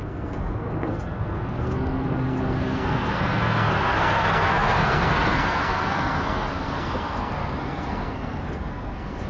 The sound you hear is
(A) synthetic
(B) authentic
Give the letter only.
A